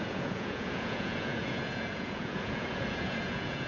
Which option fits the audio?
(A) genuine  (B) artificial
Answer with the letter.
B